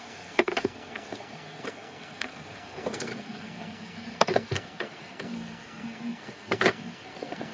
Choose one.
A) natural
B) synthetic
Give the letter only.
B